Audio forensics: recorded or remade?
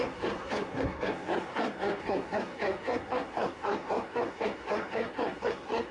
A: remade